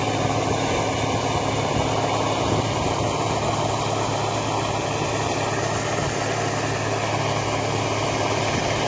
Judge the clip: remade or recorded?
recorded